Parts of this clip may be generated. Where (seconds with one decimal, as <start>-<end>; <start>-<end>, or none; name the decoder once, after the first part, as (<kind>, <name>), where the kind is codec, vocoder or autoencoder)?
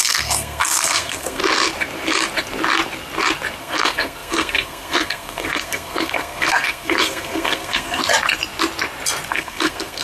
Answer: 0.0-1.4 (codec, SNAC); 3.6-8.0; 9.3-10.0